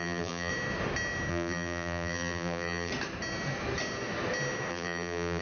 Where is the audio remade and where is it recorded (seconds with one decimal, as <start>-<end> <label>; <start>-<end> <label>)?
0.0-0.5 remade; 0.5-1.3 recorded; 1.3-2.9 remade; 2.9-4.7 recorded; 4.7-5.4 remade